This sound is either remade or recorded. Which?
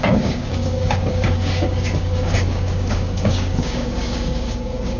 remade